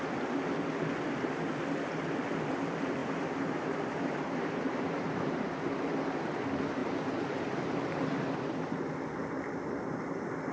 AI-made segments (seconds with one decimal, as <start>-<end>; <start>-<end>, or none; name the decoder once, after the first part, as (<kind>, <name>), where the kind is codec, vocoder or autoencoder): 3.0-5.4 (vocoder, BigVGAN v2); 6.8-8.2